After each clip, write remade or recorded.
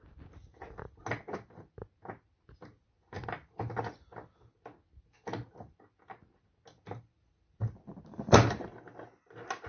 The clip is recorded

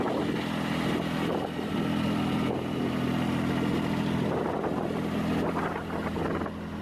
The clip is recorded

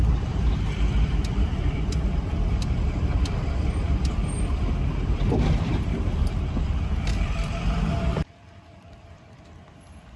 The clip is remade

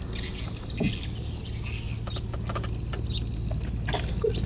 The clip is recorded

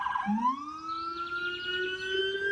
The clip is recorded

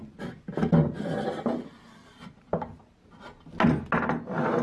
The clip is recorded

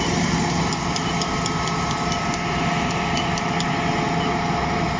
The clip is recorded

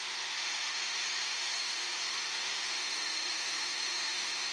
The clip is remade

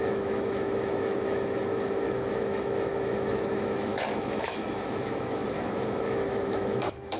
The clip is remade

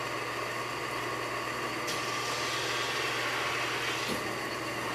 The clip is recorded